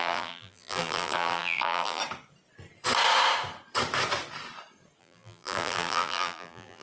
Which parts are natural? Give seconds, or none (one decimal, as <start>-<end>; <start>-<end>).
2.0-5.0